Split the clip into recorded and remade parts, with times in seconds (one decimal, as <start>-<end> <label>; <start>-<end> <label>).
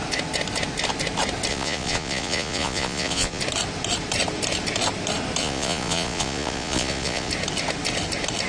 0.0-1.5 recorded; 1.5-3.4 remade; 3.4-5.4 recorded; 5.4-7.3 remade; 7.3-8.5 recorded